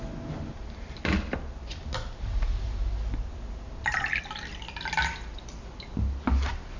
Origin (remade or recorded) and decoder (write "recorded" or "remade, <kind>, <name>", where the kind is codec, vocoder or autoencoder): recorded